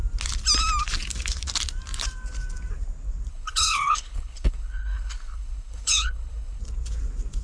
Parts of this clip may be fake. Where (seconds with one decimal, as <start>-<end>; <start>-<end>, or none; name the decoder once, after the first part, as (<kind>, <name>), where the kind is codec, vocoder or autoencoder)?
3.3-6.6 (codec, HILCodec)